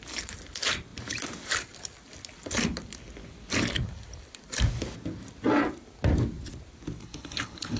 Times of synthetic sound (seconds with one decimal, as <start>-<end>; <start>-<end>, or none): 7.0-7.8